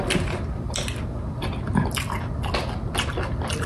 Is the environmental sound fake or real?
real